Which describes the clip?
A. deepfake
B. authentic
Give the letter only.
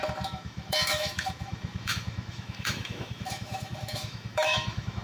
A